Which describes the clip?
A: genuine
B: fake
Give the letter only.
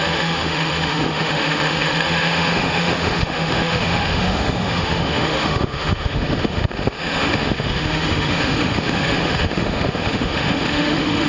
B